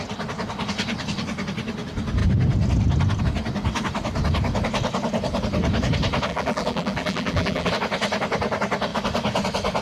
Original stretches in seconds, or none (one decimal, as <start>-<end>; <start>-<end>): 0.0-6.3; 7.7-9.8